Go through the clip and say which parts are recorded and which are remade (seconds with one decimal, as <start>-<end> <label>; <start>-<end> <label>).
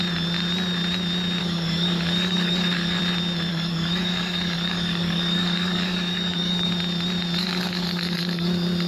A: 0.0-1.4 recorded; 1.4-3.0 remade; 3.0-3.5 recorded; 3.5-6.7 remade; 6.7-7.4 recorded; 7.4-8.5 remade; 8.5-8.9 recorded